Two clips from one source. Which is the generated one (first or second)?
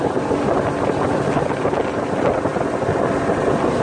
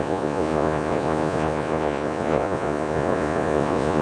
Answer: second